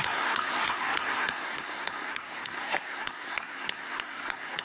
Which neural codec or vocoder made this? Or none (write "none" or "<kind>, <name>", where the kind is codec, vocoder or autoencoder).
codec, SNAC